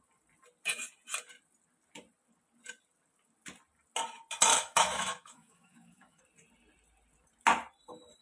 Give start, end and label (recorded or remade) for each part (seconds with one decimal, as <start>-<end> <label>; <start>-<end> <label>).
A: 0.0-4.5 recorded; 4.5-6.2 remade; 6.2-8.2 recorded